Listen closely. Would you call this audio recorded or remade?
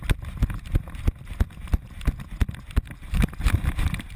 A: recorded